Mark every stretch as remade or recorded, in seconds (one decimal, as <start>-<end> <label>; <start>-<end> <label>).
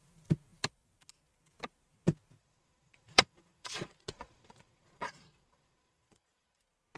0.0-2.4 recorded; 2.4-6.6 remade; 6.6-7.0 recorded